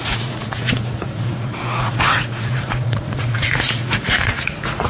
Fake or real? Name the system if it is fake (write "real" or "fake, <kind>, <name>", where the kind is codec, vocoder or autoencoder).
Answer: fake, vocoder, Vocos